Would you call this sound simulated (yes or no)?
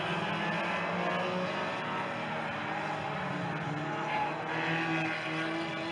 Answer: no